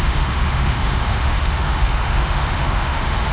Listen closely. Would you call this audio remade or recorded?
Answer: remade